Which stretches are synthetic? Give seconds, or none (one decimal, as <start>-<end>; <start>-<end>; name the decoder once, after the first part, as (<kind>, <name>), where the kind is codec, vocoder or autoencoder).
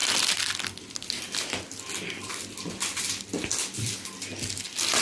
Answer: none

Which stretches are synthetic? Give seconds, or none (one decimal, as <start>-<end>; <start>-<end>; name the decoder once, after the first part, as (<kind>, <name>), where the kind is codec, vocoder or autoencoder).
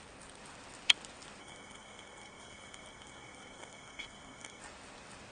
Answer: 1.4-4.6 (codec, SNAC)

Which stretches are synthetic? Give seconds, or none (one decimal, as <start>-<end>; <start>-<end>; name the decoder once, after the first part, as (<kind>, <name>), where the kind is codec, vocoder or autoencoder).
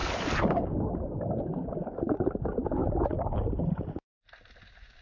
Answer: 0.0-0.9 (codec, DAC)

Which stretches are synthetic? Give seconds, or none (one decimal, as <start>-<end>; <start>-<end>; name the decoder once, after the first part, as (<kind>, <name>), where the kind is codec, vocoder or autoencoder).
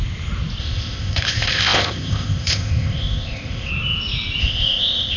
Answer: 0.6-3.7 (codec, ZipCodec); 4.4-5.2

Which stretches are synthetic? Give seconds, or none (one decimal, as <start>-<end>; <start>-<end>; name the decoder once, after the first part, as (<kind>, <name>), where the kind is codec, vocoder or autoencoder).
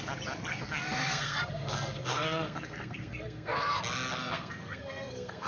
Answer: 0.5-3.8 (codec, SNAC); 4.2-5.5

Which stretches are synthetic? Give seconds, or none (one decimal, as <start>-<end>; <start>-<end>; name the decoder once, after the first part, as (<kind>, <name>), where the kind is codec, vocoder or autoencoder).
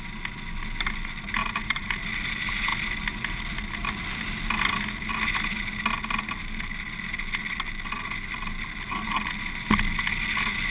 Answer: 1.4-2.0 (vocoder, BigVGAN v2)